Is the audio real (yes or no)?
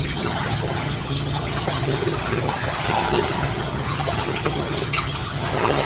no